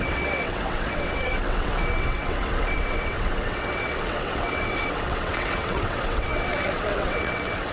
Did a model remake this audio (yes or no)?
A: yes